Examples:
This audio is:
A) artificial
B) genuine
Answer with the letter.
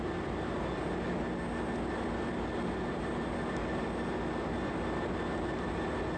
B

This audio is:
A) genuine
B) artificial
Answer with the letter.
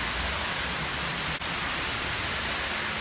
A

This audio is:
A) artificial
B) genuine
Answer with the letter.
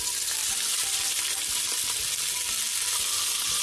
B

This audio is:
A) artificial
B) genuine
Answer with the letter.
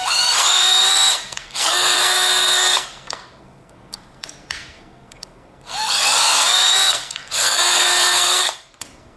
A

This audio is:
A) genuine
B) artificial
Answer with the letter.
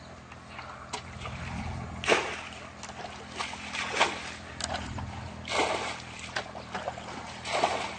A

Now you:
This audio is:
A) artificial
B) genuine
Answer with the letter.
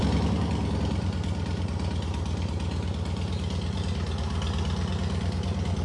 B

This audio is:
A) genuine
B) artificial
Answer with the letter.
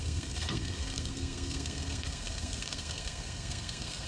B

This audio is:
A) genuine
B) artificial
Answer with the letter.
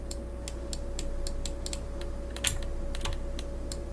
A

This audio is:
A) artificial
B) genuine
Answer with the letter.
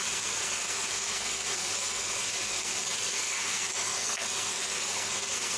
A